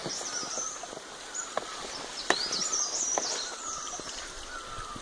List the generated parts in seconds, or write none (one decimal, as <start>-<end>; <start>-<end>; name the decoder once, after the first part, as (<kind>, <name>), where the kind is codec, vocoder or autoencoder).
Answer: 0.0-0.9 (vocoder, BigVGAN v2); 2.6-4.4